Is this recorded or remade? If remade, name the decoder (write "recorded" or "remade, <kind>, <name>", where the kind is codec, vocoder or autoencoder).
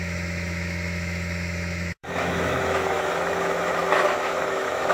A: remade, autoencoder, DAC-VAE